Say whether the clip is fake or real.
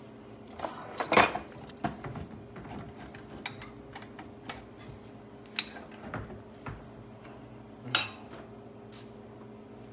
real